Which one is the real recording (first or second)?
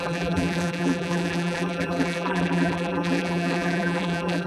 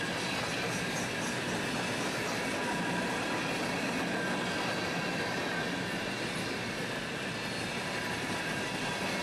second